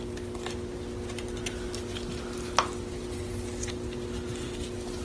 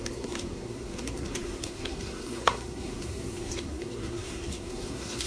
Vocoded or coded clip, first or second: second